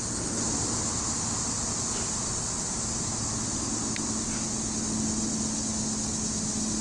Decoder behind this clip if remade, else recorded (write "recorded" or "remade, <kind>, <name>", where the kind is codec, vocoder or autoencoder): recorded